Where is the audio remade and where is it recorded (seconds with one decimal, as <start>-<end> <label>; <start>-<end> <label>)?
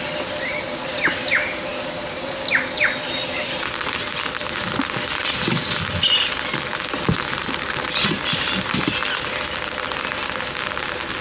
0.0-11.2 recorded